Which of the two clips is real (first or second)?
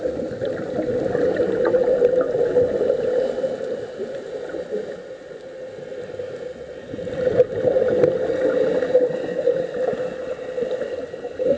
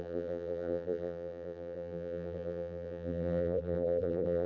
first